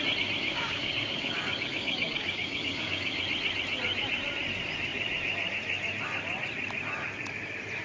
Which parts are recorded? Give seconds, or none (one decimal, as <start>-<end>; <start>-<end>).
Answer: 0.0-0.4; 3.2-7.8